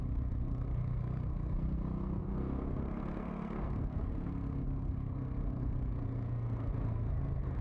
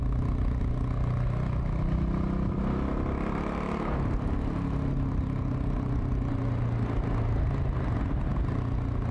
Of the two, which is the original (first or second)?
second